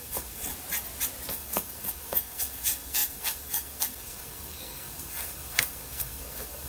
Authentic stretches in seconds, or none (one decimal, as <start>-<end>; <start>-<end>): 0.5-1.3